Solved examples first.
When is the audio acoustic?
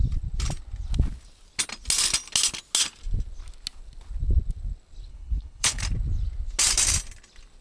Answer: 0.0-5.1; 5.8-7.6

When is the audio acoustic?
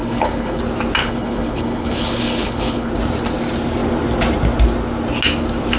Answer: 0.6-1.0; 2.9-5.8